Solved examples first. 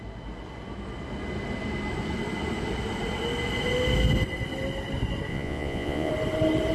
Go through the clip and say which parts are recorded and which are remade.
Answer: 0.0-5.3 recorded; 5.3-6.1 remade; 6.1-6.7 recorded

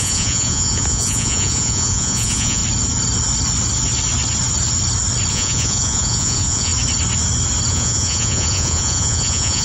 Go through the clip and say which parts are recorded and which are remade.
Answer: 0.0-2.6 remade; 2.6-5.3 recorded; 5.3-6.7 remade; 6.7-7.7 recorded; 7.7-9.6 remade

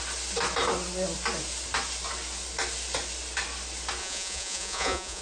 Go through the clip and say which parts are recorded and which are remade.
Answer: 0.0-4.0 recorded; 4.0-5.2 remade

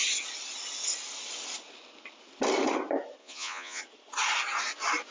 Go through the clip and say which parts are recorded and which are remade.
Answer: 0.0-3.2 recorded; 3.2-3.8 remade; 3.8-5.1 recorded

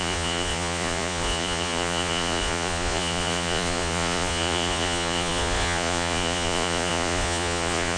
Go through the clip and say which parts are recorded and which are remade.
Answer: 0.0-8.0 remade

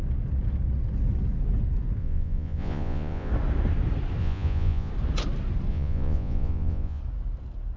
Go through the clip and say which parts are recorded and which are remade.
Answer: 0.0-2.0 recorded; 2.0-3.3 remade; 3.3-4.2 recorded; 4.2-4.9 remade; 4.9-5.7 recorded; 5.7-7.0 remade; 7.0-7.8 recorded

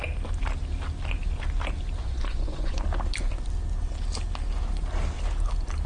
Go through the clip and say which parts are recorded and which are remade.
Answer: 0.0-2.0 recorded; 2.0-2.8 remade; 2.8-5.9 recorded

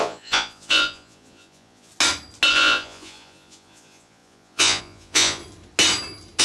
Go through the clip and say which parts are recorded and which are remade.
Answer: 0.0-1.9 remade; 1.9-2.5 recorded; 2.5-5.4 remade; 5.4-6.4 recorded